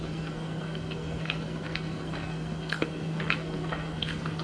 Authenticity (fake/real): fake